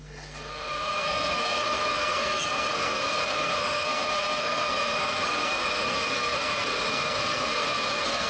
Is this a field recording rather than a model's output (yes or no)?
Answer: no